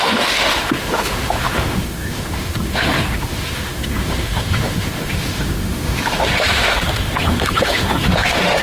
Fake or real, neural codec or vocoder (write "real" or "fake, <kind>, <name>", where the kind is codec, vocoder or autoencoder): fake, autoencoder, DAC-VAE